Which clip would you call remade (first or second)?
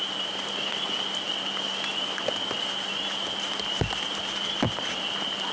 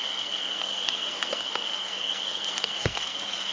second